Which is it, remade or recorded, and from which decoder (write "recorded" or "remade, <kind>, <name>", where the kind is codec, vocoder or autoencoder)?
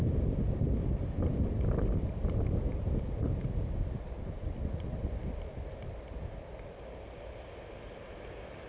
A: recorded